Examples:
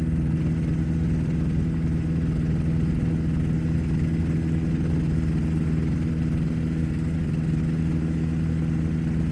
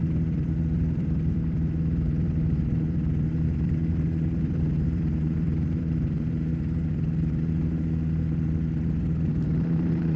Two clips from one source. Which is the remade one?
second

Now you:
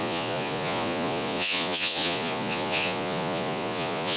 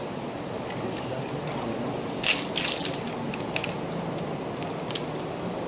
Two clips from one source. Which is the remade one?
first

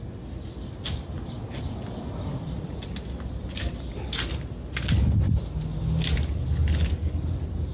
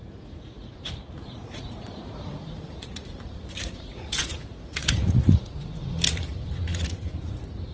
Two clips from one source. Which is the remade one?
second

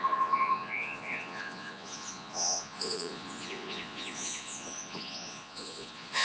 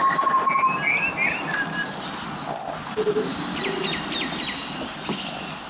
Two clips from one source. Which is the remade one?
first